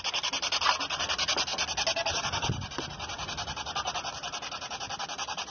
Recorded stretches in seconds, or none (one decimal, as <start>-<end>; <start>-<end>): 0.0-5.5